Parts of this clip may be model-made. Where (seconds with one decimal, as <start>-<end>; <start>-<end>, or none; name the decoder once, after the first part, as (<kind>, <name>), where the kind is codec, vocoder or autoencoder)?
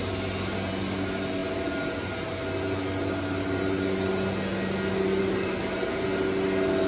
none